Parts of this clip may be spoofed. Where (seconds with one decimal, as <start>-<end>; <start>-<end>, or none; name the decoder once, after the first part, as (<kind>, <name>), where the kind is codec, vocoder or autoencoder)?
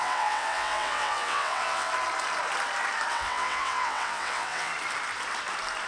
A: 0.0-1.9 (vocoder, WaveNeXt); 3.1-4.7